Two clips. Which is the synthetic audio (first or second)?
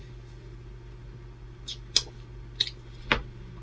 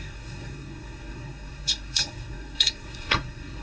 second